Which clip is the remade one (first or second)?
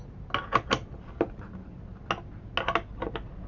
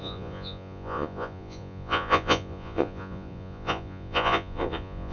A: second